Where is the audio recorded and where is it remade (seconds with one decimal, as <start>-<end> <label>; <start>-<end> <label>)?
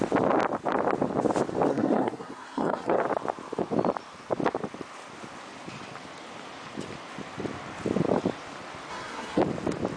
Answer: 0.0-1.7 recorded; 1.7-3.0 remade; 3.0-8.9 recorded; 8.9-9.4 remade; 9.4-10.0 recorded